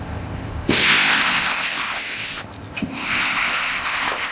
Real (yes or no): no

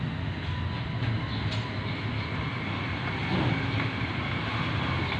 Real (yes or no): yes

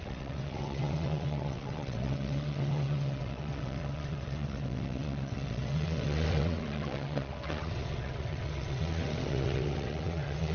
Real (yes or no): no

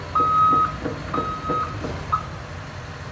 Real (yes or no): yes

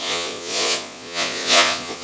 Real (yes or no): no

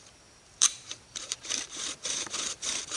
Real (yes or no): no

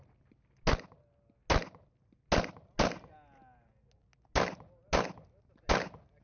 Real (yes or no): yes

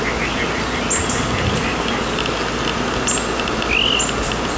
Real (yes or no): yes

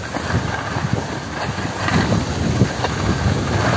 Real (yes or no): yes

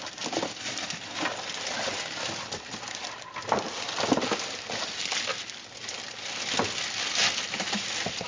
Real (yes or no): no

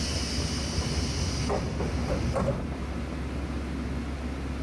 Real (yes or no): yes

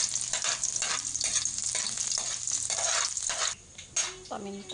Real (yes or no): yes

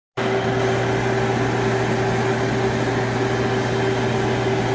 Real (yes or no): yes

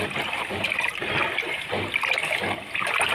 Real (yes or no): yes